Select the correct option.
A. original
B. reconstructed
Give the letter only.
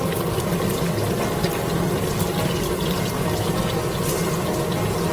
A